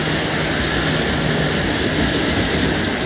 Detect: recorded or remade recorded